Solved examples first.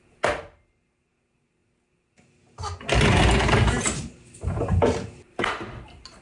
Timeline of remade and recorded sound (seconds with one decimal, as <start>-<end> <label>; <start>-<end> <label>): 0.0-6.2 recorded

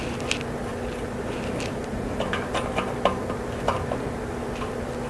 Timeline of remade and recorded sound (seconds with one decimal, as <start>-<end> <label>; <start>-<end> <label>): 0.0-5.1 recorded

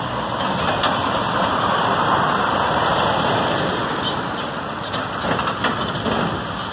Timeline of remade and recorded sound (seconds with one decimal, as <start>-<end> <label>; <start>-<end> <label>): 0.0-1.0 recorded; 1.0-3.8 remade; 3.8-6.7 recorded